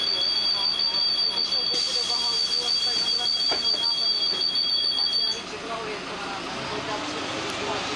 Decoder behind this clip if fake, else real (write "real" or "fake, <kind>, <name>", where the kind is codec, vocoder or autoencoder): real